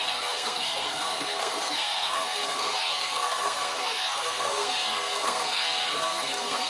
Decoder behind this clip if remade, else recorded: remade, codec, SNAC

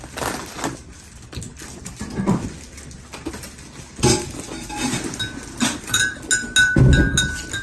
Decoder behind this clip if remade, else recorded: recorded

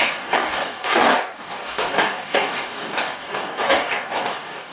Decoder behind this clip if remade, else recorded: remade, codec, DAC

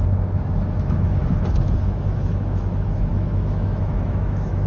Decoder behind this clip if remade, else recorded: remade, autoencoder, DAC-VAE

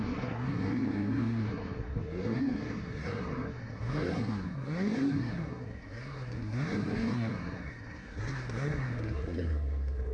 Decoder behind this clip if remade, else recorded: remade, codec, SNAC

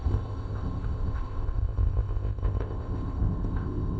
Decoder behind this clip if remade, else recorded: remade, codec, ZipCodec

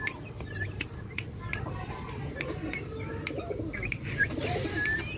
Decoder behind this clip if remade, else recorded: recorded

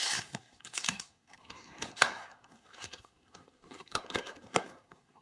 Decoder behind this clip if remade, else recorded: remade, codec, SNAC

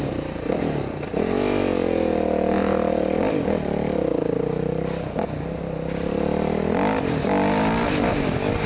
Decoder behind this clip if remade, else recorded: recorded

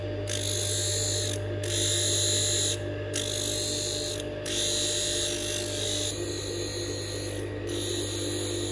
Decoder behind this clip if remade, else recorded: recorded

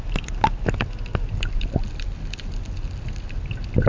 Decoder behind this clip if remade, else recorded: recorded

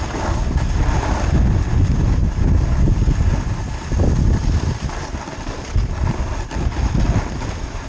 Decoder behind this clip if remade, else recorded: recorded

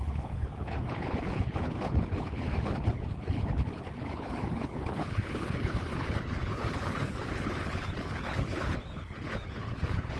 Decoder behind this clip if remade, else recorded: remade, codec, HILCodec